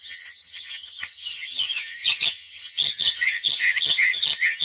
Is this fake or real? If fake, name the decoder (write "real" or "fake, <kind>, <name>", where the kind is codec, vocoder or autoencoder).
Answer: fake, vocoder, HiFi-GAN